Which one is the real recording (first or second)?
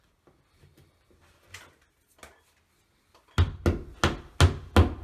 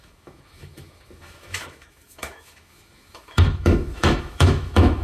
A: first